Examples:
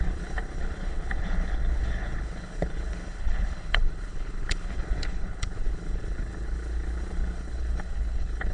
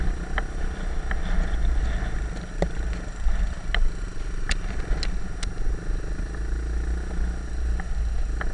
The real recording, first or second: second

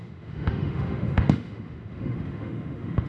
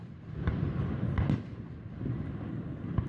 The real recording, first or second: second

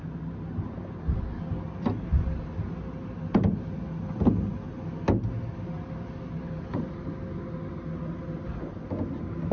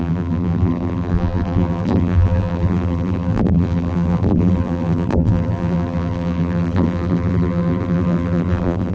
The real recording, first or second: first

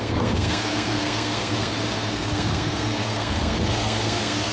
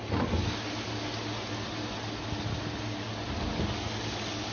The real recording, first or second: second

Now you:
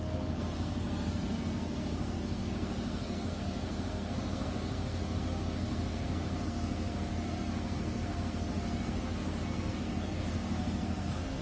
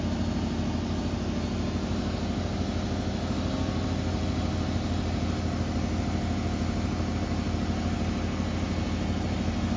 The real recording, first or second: second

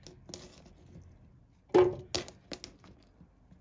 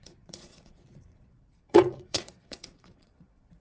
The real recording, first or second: first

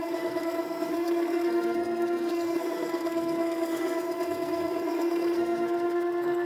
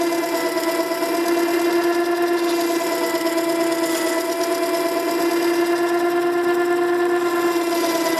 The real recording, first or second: second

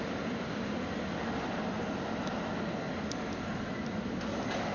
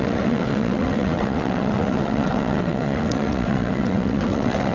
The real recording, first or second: first